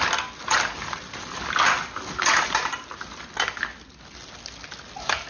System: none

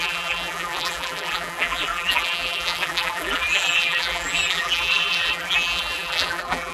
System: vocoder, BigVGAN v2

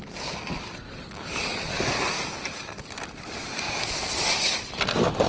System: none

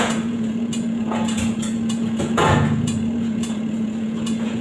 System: vocoder, Vocos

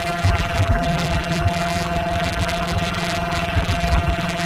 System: vocoder, BigVGAN v2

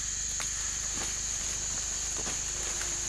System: none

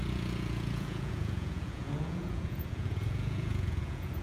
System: vocoder, Vocos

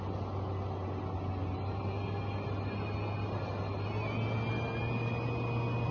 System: none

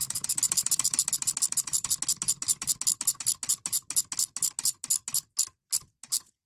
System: none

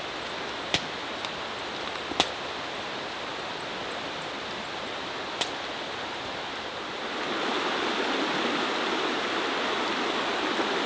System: none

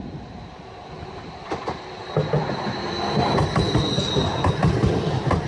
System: none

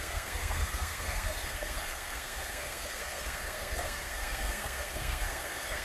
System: codec, SNAC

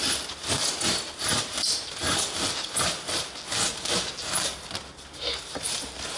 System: none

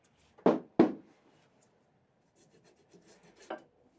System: none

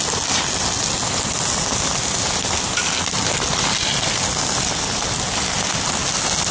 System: none